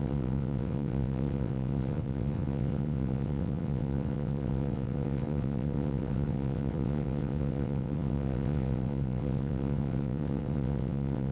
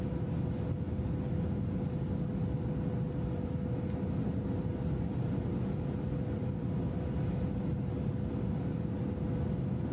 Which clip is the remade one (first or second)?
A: first